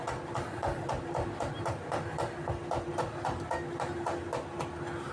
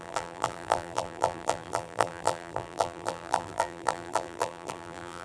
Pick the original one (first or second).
first